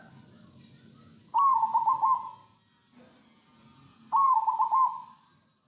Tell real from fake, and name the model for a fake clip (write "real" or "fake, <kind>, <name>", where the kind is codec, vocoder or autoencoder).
real